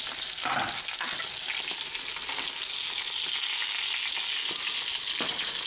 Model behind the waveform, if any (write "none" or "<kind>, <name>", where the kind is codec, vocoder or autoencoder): none